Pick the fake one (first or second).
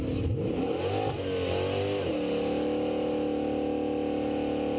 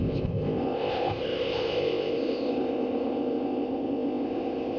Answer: second